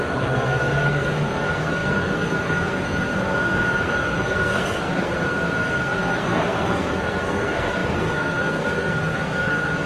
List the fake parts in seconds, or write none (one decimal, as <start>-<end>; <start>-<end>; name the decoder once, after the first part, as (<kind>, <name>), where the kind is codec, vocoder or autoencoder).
0.0-9.9 (codec, SNAC)